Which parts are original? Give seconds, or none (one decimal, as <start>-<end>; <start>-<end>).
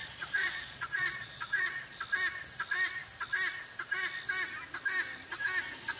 2.0-6.0